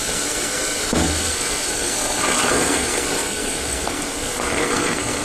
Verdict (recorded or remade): remade